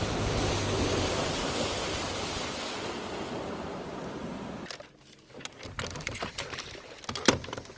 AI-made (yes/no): no